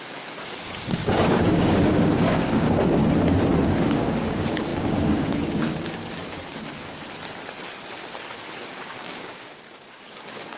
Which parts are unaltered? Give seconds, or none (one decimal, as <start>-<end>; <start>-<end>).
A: 3.0-3.6; 6.0-8.6